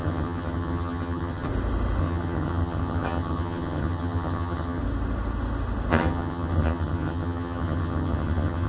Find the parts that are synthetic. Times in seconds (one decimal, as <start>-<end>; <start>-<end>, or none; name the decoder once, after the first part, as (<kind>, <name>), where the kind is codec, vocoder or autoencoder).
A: 0.0-1.5 (vocoder, HiFi-GAN); 2.0-4.8; 5.9-8.7